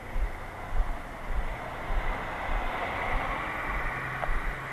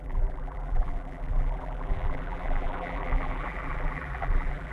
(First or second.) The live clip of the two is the first